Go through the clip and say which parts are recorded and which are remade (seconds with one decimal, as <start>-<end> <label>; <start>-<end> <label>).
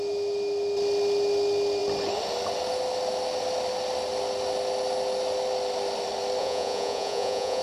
0.0-6.4 recorded; 6.4-7.6 remade